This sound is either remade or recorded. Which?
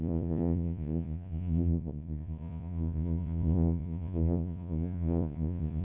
remade